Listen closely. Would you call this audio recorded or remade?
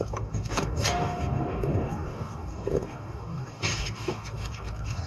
remade